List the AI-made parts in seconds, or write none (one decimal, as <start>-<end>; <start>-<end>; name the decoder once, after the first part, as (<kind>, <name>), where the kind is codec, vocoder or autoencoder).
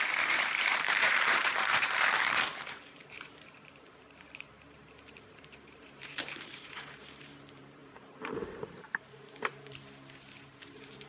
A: 0.0-11.1 (vocoder, BigVGAN v2)